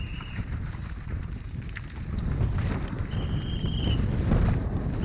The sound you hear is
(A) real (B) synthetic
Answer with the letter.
A